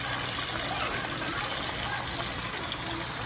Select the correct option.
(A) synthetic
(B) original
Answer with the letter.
B